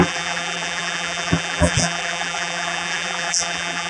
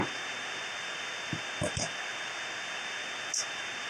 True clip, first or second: second